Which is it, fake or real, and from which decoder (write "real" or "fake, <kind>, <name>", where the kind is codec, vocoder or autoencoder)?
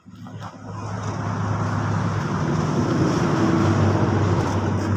real